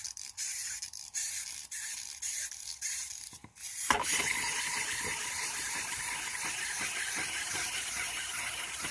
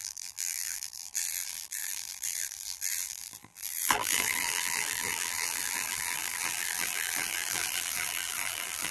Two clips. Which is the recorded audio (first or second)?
first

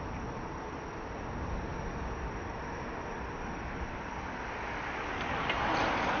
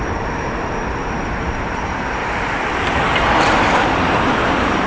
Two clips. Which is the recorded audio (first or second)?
first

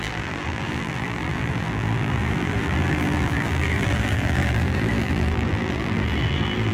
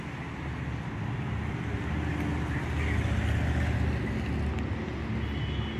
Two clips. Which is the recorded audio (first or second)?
second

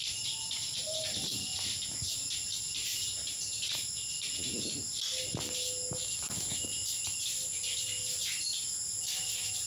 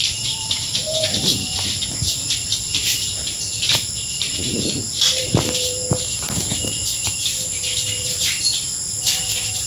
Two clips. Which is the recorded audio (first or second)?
first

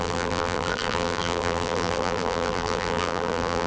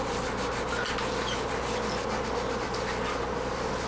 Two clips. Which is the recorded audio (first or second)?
second